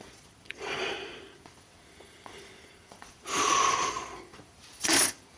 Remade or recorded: remade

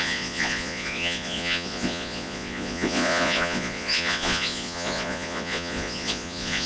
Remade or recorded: remade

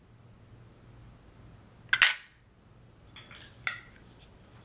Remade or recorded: recorded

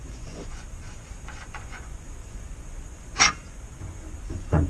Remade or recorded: remade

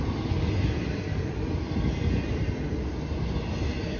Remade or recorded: recorded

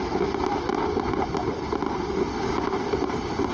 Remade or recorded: recorded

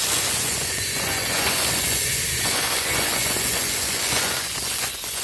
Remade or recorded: remade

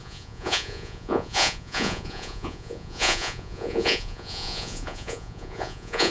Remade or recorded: remade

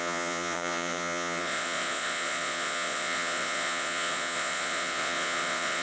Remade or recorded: remade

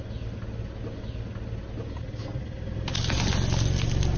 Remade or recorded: recorded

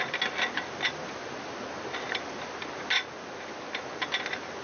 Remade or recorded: recorded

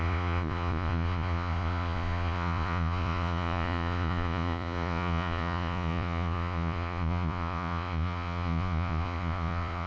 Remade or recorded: remade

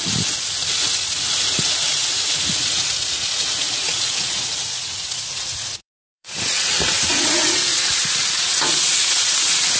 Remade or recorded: remade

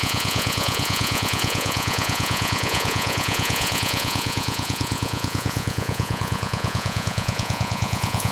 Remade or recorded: remade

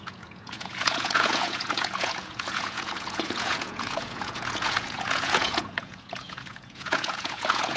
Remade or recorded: remade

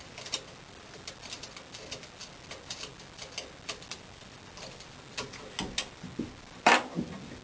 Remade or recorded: recorded